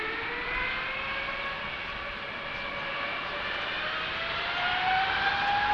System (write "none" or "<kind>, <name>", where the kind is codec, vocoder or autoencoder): none